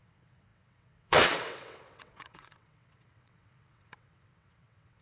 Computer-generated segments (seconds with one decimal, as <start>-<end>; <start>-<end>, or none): 0.0-5.0